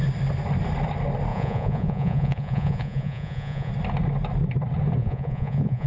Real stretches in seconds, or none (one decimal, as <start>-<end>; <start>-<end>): 0.0-1.3; 3.7-5.0